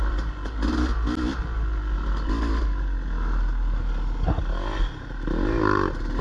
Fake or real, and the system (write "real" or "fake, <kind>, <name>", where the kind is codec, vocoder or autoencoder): real